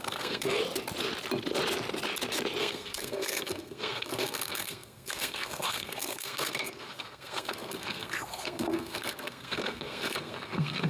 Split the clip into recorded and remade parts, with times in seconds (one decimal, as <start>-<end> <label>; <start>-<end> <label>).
0.0-0.6 remade; 0.6-2.6 recorded; 2.6-10.9 remade